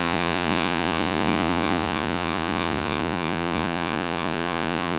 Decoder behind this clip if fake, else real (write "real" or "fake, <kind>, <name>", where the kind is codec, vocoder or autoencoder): fake, vocoder, Vocos